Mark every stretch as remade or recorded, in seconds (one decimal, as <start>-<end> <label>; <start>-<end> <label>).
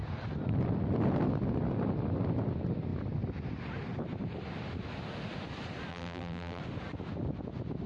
0.0-5.9 recorded; 5.9-6.6 remade; 6.6-7.9 recorded